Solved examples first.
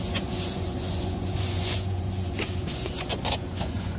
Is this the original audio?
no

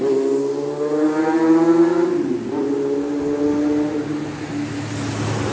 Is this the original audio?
yes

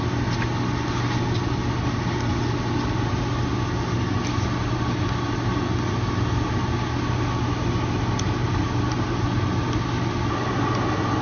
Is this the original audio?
yes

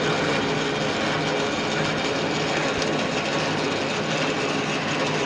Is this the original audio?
yes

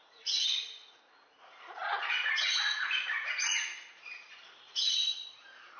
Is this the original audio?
no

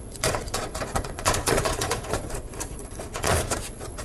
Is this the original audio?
no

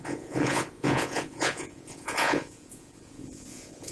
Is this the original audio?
no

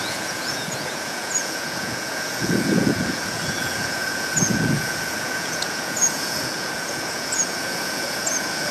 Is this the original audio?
no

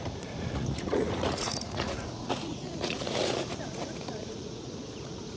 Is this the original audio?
no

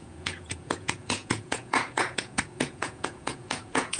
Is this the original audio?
no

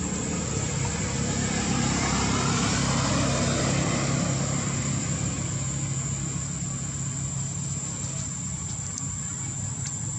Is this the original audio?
yes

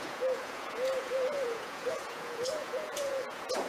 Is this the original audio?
no